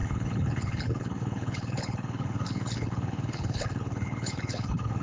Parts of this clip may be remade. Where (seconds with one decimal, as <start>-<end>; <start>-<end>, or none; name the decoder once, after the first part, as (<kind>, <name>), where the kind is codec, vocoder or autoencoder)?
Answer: 0.0-5.0 (codec, HILCodec)